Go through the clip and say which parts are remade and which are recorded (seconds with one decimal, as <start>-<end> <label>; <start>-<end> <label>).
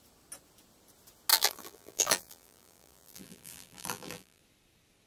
0.0-1.3 recorded; 1.3-4.4 remade; 4.4-5.1 recorded